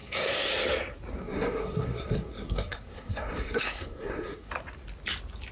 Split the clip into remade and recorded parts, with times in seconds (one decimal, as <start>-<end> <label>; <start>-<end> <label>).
0.0-0.5 remade; 0.5-1.2 recorded; 1.2-4.5 remade; 4.5-5.5 recorded